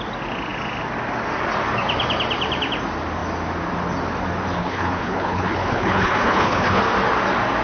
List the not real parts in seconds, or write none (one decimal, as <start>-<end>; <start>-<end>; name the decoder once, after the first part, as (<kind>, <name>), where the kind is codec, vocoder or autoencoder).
4.6-6.8 (codec, HILCodec)